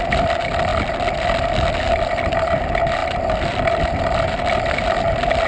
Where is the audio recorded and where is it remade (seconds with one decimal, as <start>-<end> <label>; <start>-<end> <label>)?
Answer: 0.0-0.7 remade; 0.7-1.7 recorded; 1.7-5.5 remade